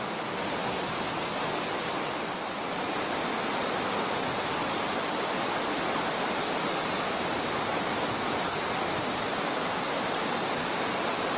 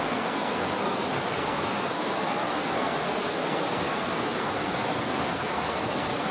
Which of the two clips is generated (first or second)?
second